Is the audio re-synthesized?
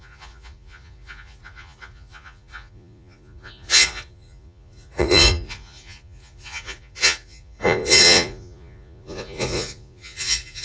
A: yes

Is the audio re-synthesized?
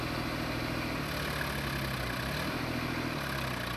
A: no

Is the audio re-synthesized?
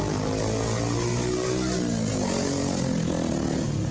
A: no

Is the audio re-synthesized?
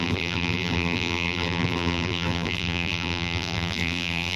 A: yes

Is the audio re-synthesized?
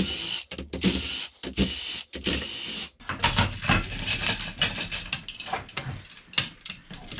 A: no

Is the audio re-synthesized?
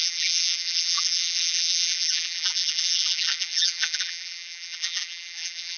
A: yes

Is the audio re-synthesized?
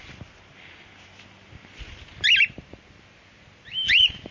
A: no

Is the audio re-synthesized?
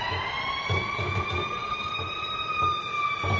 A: no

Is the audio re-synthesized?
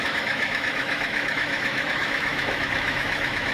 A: yes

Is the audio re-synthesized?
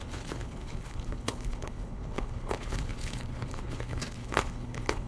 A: yes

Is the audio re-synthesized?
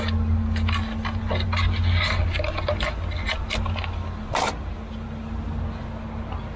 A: no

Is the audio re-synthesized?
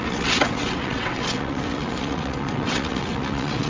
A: yes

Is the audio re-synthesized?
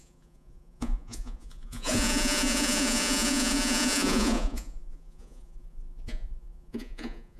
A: yes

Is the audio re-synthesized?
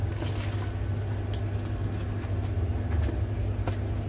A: no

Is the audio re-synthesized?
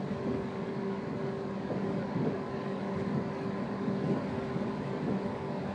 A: yes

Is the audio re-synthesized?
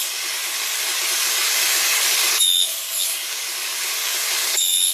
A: yes